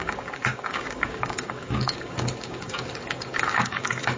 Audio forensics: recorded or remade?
remade